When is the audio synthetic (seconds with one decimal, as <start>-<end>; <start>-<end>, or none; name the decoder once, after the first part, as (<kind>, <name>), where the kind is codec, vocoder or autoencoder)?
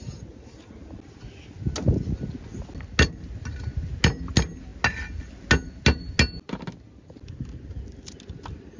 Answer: none